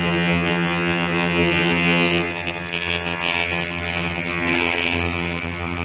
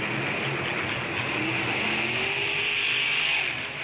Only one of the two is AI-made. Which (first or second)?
first